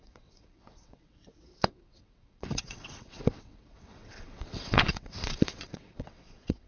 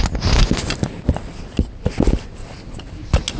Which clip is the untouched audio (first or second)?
second